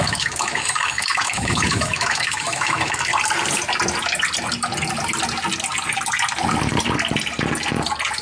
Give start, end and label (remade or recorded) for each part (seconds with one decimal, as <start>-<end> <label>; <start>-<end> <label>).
0.0-3.1 remade; 3.1-8.2 recorded